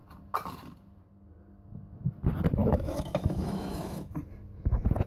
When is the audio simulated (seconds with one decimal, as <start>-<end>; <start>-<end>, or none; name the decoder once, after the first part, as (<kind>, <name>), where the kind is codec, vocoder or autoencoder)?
2.6-4.2 (autoencoder, DAC-VAE)